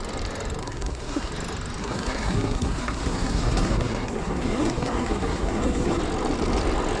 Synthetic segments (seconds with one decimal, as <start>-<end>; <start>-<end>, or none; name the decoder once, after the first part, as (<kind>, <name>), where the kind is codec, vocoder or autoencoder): 0.6-1.3 (codec, SNAC); 1.8-6.0

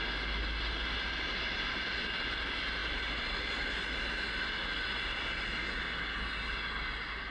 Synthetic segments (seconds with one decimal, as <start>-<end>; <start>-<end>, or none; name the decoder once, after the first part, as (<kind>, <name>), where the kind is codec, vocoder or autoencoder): none

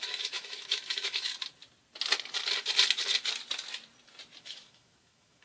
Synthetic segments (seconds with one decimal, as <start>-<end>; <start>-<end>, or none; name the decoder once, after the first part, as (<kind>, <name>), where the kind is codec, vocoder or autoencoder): 0.0-1.3 (autoencoder, DAC-VAE); 4.4-5.4

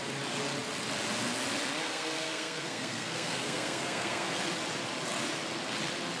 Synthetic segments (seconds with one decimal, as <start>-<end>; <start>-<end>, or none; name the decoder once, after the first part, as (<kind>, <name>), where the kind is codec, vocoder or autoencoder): 1.8-4.4 (codec, SNAC)

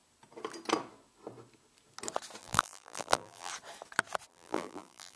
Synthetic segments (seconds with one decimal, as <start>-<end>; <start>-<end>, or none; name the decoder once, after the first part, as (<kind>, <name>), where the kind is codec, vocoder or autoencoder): 2.4-3.5 (vocoder, BigVGAN v2); 4.3-5.2

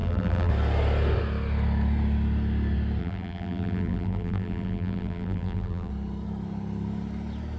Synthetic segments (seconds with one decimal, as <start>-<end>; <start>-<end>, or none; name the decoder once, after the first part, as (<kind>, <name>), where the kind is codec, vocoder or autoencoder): 0.0-0.5 (vocoder, BigVGAN v2); 3.0-5.9

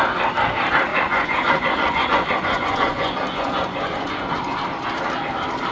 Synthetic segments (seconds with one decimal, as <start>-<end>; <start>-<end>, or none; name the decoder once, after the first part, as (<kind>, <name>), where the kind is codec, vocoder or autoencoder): 0.9-4.3 (vocoder, Vocos)

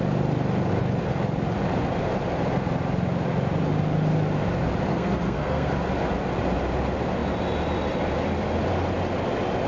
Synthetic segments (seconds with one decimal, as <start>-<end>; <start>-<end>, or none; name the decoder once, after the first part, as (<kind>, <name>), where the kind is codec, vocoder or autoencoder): 4.9-5.7 (codec, SNAC)